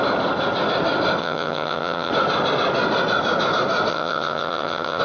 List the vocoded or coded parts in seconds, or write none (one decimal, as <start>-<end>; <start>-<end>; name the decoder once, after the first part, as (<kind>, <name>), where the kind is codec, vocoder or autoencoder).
1.2-2.1 (vocoder, HiFi-GAN); 3.9-5.0